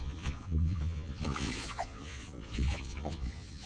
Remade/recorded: remade